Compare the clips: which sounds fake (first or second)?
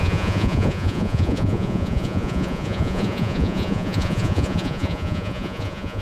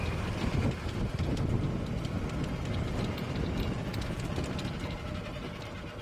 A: first